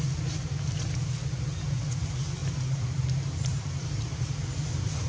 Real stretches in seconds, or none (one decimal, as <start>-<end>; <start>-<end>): 0.0-2.4; 4.4-5.1